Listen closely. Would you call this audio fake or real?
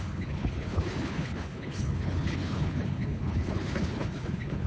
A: fake